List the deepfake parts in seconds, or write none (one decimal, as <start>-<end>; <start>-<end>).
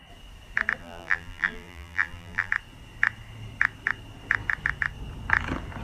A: 0.8-2.5